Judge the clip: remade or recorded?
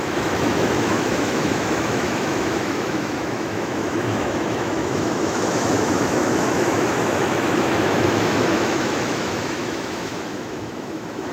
remade